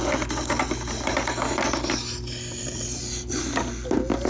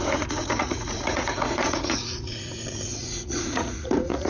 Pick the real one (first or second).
first